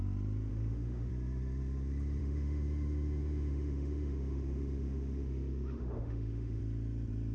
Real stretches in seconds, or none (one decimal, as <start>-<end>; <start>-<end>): 0.0-0.5; 1.1-2.2; 6.6-7.3